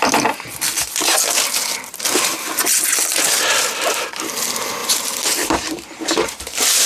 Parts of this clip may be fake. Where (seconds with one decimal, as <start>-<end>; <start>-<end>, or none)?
4.8-6.9